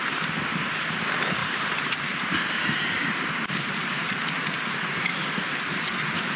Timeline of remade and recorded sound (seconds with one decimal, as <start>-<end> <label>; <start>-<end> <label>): 0.0-1.4 recorded; 1.4-5.2 remade; 5.2-6.4 recorded